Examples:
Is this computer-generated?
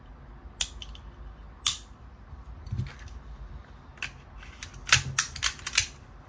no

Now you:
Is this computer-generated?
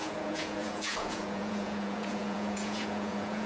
yes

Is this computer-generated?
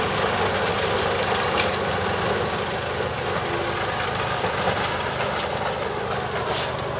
no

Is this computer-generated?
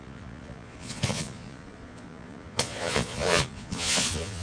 yes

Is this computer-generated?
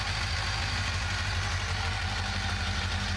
no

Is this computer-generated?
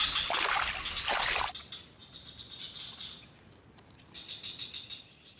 no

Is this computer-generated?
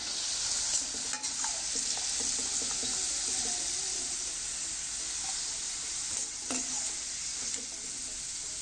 no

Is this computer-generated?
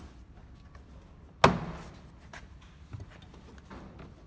no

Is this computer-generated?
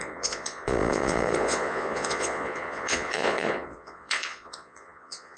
yes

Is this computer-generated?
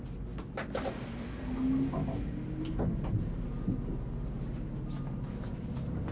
no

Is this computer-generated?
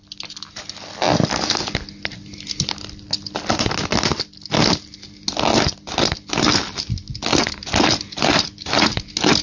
no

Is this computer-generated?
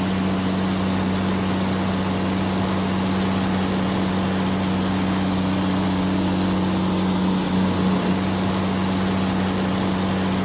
no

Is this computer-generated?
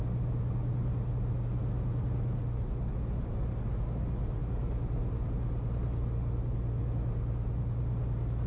no